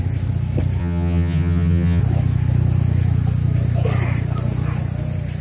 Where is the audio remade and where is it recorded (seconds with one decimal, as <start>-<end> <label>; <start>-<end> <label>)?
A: 0.0-0.8 recorded; 0.8-2.0 remade; 2.0-5.4 recorded